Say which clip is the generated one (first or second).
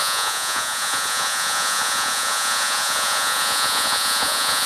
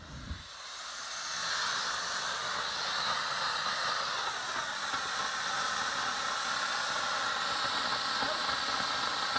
first